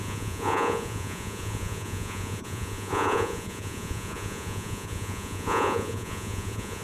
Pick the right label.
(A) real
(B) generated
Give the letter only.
B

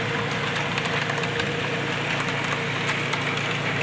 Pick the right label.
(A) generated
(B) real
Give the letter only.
B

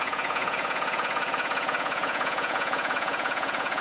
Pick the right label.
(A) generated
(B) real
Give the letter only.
A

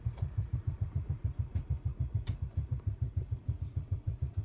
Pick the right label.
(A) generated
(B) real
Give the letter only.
A